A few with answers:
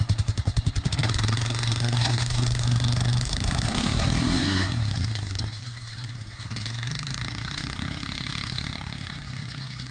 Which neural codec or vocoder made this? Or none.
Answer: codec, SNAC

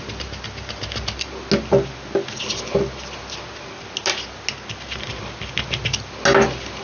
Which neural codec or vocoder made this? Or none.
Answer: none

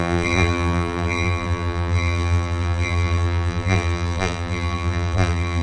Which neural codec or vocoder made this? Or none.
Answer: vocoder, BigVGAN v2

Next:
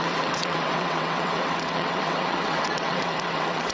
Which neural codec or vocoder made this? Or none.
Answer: vocoder, WaveNeXt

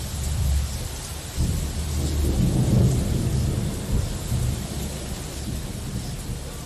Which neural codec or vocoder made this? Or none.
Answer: none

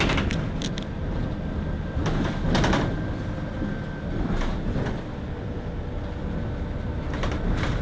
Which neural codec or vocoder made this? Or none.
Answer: none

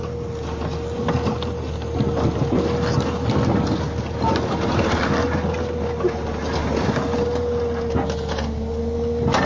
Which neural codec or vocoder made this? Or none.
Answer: none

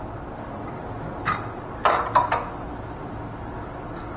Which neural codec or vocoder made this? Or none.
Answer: none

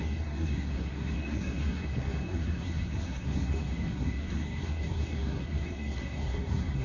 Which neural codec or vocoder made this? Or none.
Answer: codec, SNAC